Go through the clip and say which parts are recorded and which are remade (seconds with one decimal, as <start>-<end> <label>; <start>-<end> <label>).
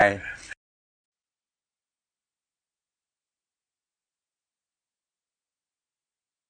0.0-6.5 recorded